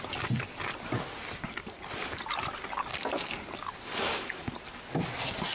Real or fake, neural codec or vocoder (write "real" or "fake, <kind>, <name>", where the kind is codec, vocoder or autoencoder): real